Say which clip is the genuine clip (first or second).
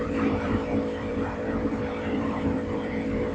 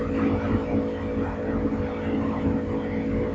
second